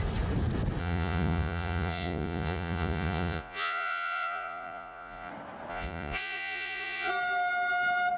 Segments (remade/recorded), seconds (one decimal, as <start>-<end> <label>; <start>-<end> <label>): 0.0-0.8 recorded; 0.8-5.3 remade; 5.3-5.7 recorded; 5.7-7.1 remade; 7.1-8.2 recorded